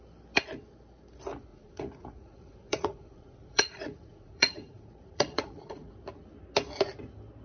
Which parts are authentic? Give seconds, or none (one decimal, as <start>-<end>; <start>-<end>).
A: 0.0-1.5; 5.9-7.4